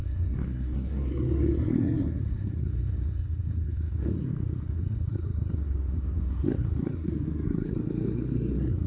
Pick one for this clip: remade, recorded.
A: remade